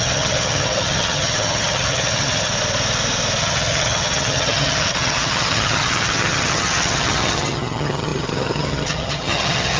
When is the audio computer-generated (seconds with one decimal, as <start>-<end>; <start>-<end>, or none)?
0.0-2.5; 3.4-9.8